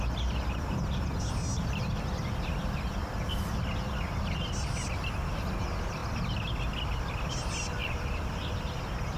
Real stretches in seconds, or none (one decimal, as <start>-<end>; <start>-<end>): 0.0-7.8; 8.5-9.2